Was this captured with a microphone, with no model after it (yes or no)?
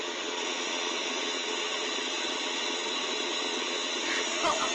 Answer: no